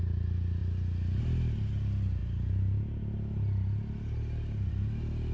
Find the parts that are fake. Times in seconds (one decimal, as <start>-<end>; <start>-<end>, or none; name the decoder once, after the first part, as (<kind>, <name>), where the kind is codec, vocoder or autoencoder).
none